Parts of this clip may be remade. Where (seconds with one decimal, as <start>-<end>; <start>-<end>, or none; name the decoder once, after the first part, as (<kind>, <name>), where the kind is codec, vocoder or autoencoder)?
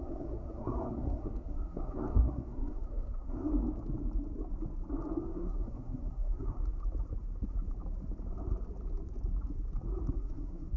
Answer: 0.0-3.5 (codec, SNAC); 5.2-6.6; 10.1-10.8